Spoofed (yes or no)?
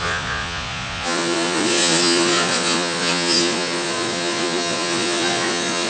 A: yes